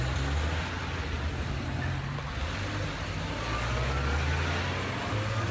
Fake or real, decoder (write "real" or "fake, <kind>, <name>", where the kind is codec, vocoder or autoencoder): real